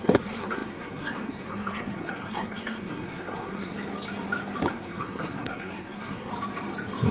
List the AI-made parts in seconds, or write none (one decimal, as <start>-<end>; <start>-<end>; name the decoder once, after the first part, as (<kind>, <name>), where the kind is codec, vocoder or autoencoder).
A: 0.0-3.7 (codec, SNAC); 4.7-6.3